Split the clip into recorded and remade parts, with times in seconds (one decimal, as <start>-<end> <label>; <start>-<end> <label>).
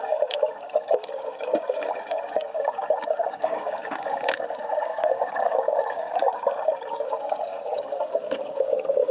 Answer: 0.0-9.1 remade